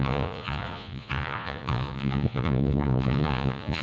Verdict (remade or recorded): remade